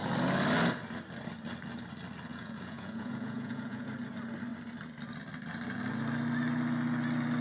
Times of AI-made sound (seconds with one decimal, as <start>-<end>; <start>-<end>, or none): 2.3-3.9